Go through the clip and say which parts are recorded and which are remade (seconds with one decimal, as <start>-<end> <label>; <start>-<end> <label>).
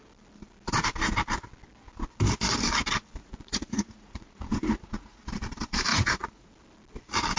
0.0-3.2 recorded; 3.2-5.2 remade; 5.2-5.9 recorded; 5.9-6.5 remade; 6.5-7.4 recorded